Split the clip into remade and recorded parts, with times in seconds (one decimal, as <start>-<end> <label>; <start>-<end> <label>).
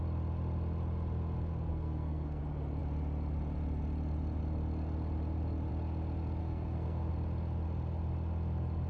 0.0-1.7 recorded; 1.7-2.4 remade; 2.4-6.4 recorded; 6.4-7.1 remade; 7.1-8.9 recorded